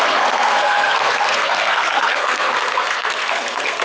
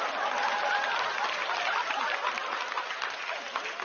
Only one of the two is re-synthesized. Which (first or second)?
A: first